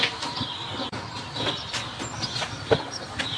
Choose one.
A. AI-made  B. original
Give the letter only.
B